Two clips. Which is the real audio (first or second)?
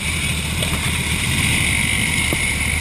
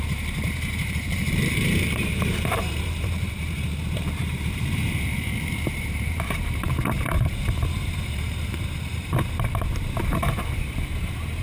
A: first